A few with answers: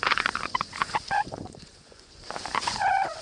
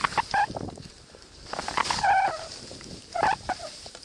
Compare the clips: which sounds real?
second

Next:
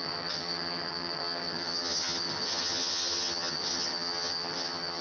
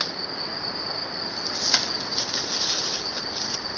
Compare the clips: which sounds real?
second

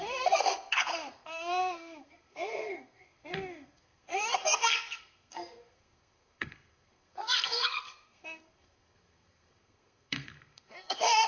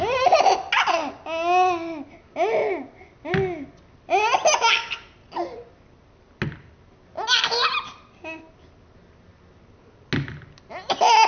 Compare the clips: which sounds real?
second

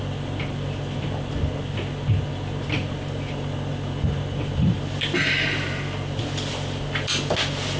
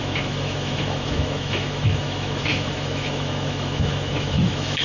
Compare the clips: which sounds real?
first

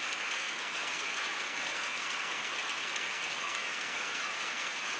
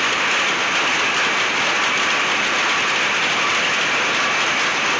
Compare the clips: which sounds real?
second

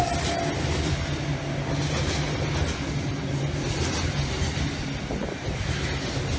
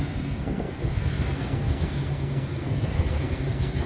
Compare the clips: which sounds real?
first